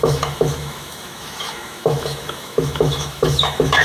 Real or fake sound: fake